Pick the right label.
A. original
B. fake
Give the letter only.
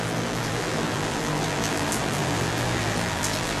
B